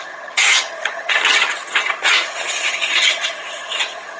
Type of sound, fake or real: fake